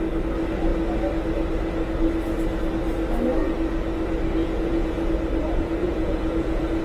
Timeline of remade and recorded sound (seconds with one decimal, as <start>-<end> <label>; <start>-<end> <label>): 0.0-4.4 recorded; 4.4-5.1 remade; 5.1-5.8 recorded; 5.8-6.8 remade